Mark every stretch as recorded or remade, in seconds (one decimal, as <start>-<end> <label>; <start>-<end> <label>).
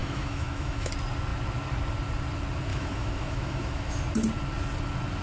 0.0-0.9 remade; 0.9-2.7 recorded; 2.7-4.0 remade; 4.0-5.2 recorded